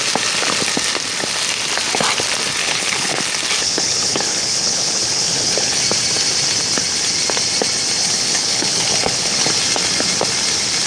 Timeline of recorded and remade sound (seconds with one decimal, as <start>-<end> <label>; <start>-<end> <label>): 0.0-2.6 recorded; 2.6-3.2 remade; 3.2-3.6 recorded; 3.6-5.8 remade; 5.8-8.0 recorded; 8.0-9.5 remade; 9.5-10.9 recorded